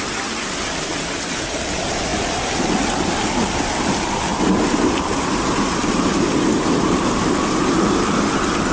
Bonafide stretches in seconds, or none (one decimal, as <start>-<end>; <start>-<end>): 0.0-8.7